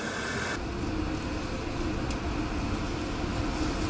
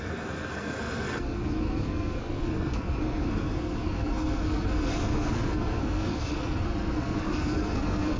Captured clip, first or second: first